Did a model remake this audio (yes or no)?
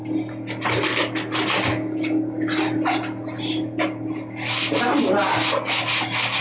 no